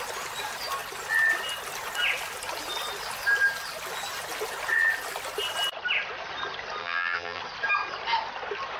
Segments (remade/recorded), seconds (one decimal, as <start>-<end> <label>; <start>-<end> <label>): 0.0-6.8 recorded; 6.8-7.4 remade; 7.4-8.8 recorded